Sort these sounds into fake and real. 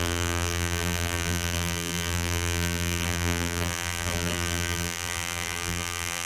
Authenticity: fake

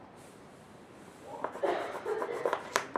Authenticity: fake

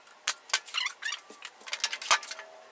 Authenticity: real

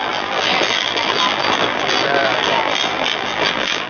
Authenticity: fake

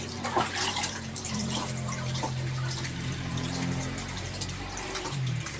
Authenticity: fake